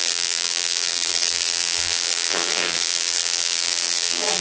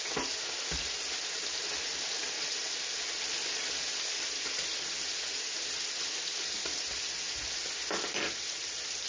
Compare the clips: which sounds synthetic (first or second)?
first